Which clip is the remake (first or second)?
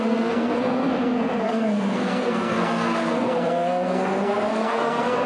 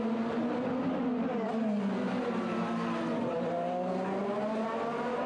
first